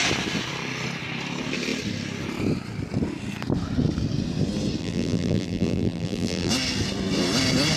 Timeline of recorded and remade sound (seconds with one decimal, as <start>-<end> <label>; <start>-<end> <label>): 0.0-4.8 recorded; 4.8-6.5 remade; 6.5-7.8 recorded